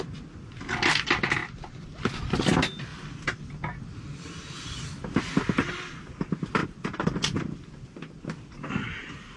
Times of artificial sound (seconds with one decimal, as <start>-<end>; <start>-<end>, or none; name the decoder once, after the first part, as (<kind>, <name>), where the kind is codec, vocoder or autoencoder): 1.4-2.0 (vocoder, BigVGAN v2); 2.9-5.3; 6.6-9.4